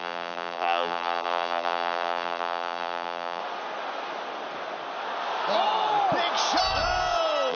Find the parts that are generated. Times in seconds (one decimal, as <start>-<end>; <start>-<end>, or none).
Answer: 0.0-3.4